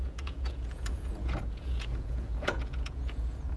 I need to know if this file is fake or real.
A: fake